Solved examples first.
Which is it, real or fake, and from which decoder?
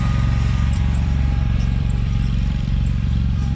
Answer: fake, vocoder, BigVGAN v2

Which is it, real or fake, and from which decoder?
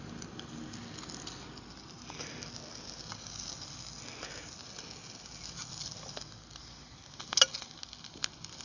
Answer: real